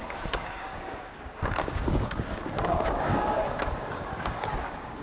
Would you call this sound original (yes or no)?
no